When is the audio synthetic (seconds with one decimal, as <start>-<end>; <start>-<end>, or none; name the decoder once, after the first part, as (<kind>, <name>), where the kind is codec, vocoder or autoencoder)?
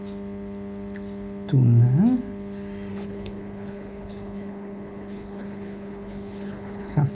2.9-7.1 (codec, HILCodec)